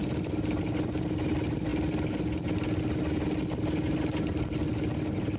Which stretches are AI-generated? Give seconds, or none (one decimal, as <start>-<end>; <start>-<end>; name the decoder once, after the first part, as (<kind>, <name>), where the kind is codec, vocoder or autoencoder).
none